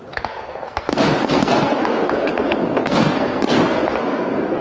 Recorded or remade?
remade